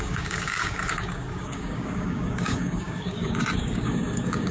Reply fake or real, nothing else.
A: fake